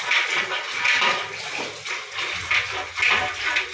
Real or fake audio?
real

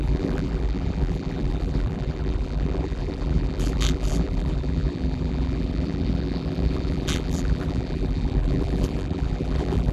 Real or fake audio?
fake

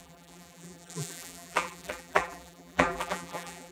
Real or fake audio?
fake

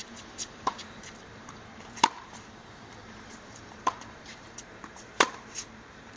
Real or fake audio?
fake